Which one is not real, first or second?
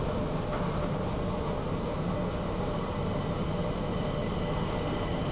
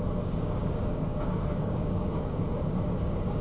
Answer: second